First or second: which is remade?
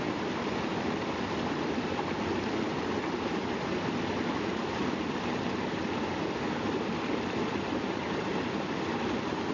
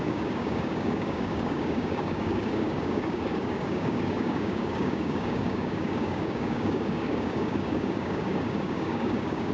second